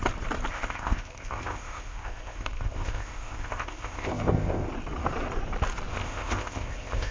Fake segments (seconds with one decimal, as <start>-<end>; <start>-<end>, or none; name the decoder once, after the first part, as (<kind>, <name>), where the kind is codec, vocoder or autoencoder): 0.5-4.7 (codec, ZipCodec); 5.9-7.1